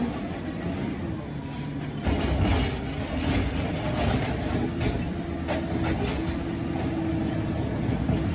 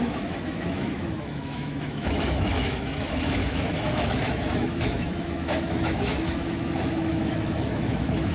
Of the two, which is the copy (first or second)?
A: second